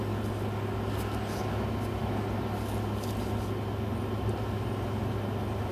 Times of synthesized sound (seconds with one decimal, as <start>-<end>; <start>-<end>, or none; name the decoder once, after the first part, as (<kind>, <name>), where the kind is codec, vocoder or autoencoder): none